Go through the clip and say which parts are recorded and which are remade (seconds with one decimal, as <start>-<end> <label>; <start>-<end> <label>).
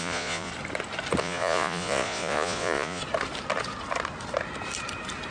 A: 0.0-0.5 remade; 0.5-1.2 recorded; 1.2-3.0 remade; 3.0-5.3 recorded